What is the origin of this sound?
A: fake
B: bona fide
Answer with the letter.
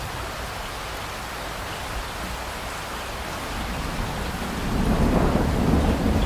B